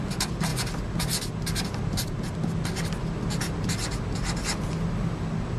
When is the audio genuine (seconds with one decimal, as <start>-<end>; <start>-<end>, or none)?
0.0-5.6